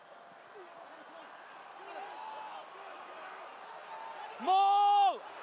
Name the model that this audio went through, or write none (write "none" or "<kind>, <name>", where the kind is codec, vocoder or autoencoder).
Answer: none